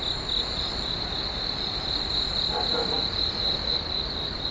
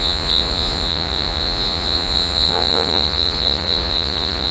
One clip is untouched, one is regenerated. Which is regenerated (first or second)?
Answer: second